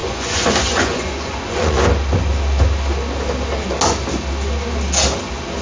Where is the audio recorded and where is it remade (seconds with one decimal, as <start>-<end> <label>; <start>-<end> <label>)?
0.0-1.8 remade; 1.8-5.6 recorded